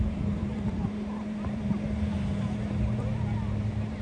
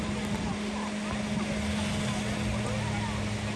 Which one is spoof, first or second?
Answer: first